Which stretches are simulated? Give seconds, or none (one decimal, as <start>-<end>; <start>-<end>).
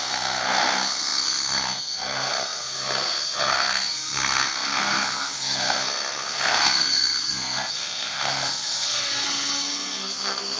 0.0-10.6